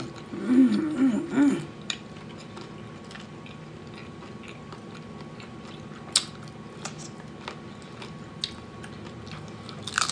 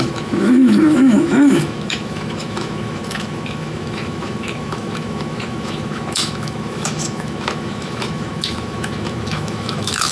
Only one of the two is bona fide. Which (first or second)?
first